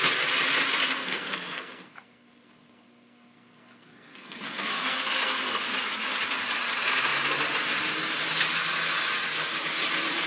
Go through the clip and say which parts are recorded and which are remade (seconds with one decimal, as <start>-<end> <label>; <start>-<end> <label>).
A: 0.0-1.0 recorded; 1.0-5.4 remade; 5.4-10.3 recorded